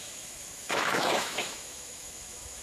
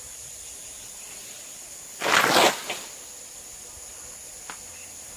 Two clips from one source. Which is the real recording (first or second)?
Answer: second